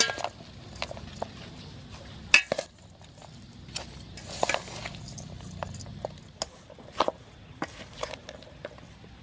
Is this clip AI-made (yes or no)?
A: no